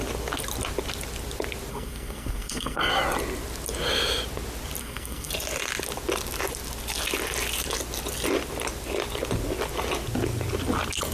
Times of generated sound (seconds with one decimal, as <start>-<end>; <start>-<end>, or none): 1.7-2.9; 4.8-5.3